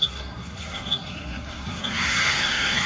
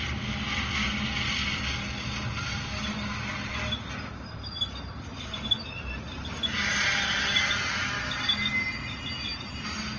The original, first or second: second